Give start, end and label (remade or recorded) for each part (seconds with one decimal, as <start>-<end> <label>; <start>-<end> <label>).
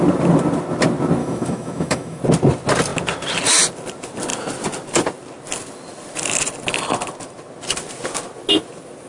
0.0-1.2 recorded; 1.2-2.2 remade; 2.2-9.1 recorded